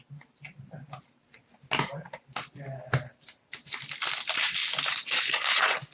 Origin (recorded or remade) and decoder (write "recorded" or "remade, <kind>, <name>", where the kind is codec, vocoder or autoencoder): recorded